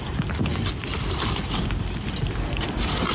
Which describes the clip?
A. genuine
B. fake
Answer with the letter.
A